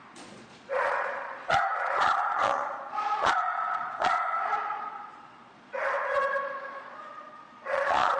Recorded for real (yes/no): no